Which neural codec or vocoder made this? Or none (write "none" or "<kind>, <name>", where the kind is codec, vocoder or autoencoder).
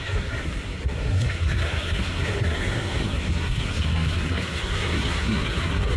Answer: codec, SNAC